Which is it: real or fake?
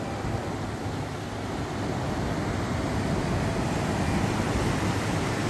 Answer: real